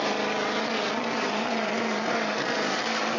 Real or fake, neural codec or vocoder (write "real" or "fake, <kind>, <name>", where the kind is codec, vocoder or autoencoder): real